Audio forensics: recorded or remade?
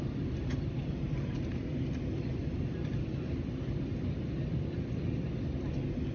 recorded